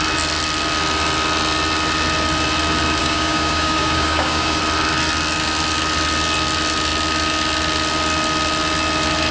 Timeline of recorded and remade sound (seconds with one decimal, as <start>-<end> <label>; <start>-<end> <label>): 0.0-3.0 recorded; 3.0-4.6 remade; 4.6-9.3 recorded